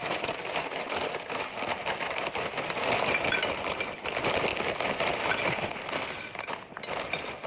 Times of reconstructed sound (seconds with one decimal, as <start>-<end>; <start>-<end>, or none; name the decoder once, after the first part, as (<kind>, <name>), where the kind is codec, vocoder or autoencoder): 0.0-2.2 (vocoder, BigVGAN v2); 4.5-5.8